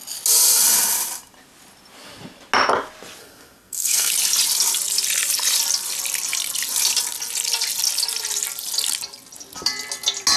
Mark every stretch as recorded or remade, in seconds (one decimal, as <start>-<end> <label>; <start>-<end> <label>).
0.0-3.2 recorded; 3.2-4.1 remade; 4.1-10.4 recorded